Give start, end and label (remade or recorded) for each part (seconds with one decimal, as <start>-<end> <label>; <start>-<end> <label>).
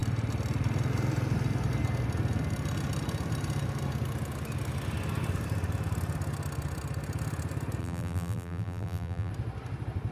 0.0-7.8 recorded; 7.8-9.3 remade; 9.3-10.1 recorded